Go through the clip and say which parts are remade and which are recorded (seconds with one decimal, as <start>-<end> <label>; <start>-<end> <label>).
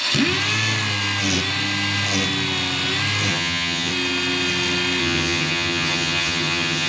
0.0-3.3 recorded; 3.3-3.9 remade; 3.9-5.0 recorded; 5.0-6.9 remade